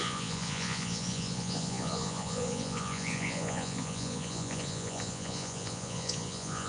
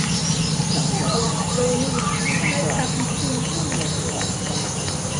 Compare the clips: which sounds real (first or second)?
second